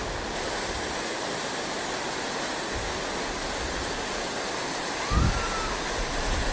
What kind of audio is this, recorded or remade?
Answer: recorded